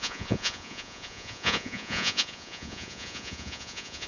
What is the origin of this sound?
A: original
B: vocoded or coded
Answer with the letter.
B